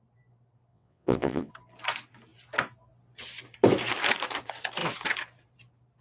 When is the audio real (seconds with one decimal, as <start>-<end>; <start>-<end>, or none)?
0.0-0.7; 1.5-6.0